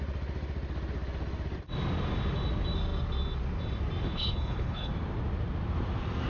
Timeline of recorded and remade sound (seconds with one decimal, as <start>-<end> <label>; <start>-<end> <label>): 0.0-4.0 recorded; 4.0-4.9 remade; 4.9-6.3 recorded